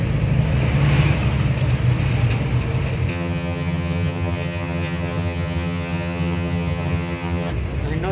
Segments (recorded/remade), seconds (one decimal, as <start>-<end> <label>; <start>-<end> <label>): 0.0-3.1 recorded; 3.1-7.5 remade; 7.5-8.1 recorded